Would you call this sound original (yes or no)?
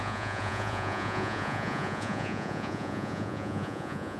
no